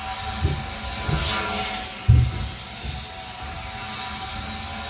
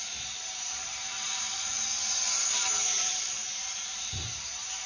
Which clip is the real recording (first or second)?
first